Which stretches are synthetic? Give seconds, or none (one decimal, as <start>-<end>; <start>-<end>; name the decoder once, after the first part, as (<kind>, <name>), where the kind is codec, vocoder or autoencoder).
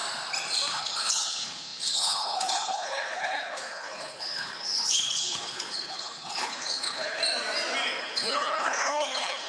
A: 0.7-7.2 (codec, HILCodec); 8.0-9.5